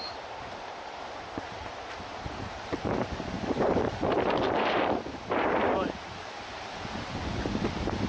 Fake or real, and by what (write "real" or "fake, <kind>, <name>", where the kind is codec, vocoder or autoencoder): fake, vocoder, BigVGAN v2